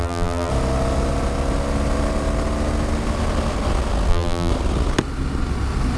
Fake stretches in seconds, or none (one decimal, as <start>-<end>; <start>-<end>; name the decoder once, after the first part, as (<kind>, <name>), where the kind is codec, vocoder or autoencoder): 0.0-0.5 (vocoder, BigVGAN v2); 4.1-4.5